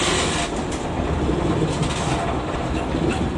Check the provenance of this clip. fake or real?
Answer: real